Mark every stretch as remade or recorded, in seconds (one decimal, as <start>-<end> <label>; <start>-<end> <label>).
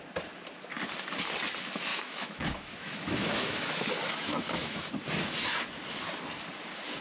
0.0-1.9 recorded; 1.9-4.9 remade; 4.9-7.0 recorded